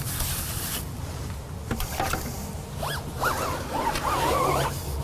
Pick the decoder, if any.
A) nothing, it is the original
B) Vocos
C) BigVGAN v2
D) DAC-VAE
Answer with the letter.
A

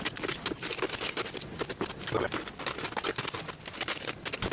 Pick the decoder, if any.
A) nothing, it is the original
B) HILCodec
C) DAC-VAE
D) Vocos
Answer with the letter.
A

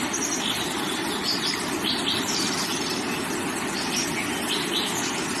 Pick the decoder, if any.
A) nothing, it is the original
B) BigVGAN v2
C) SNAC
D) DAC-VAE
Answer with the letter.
A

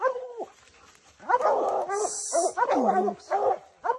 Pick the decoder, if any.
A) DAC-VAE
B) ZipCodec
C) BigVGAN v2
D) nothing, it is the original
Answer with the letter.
D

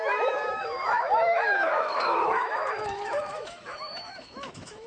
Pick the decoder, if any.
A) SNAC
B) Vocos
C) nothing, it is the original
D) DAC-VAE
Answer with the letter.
D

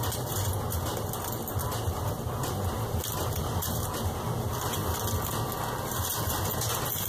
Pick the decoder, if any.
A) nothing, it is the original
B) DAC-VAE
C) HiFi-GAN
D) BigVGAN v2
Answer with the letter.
A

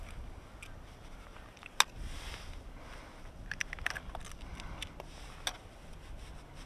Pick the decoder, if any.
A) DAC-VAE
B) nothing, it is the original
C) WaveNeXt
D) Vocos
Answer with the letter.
B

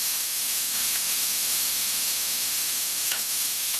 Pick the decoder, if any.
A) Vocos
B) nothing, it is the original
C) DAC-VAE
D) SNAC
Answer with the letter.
C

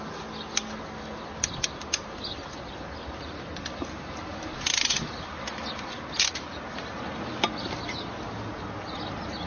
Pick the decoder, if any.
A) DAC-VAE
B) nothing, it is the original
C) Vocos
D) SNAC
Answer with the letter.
B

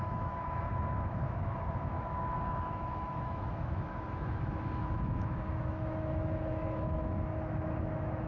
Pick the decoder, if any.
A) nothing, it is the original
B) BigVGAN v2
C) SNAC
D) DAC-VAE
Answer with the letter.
D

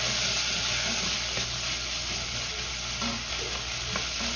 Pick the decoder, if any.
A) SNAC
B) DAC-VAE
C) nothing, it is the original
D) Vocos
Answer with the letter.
C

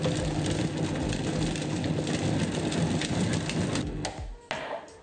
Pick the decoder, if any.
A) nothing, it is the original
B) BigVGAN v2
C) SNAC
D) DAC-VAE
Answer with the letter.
A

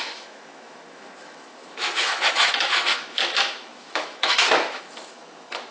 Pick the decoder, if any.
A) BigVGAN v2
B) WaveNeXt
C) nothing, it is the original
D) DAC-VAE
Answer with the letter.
D